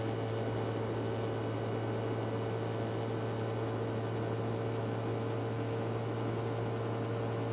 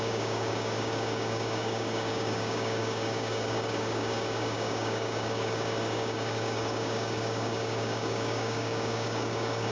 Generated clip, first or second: second